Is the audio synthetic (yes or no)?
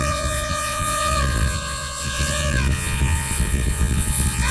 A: yes